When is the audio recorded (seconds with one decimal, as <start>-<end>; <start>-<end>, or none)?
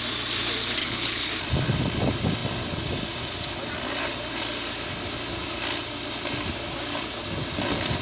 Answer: 0.0-0.8; 1.3-8.0